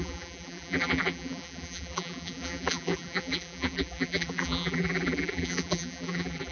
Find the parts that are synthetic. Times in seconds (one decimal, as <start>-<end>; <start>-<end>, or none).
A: 0.0-6.5